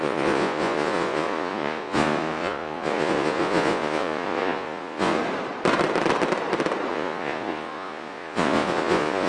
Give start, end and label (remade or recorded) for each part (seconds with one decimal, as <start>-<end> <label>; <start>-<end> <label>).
0.0-5.2 remade; 5.2-6.9 recorded; 6.9-9.3 remade